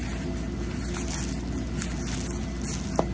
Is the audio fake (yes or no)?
no